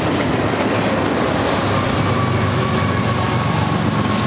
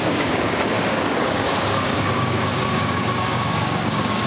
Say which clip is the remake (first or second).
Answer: second